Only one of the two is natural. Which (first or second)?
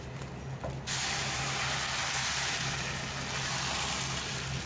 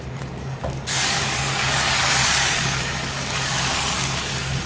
first